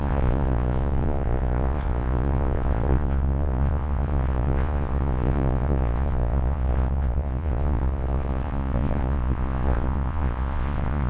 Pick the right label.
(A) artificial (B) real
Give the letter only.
A